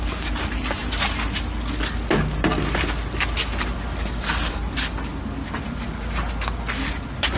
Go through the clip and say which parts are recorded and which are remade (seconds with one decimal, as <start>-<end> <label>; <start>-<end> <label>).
0.0-7.4 recorded